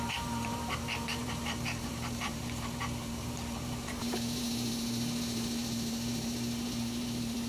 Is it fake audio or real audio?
fake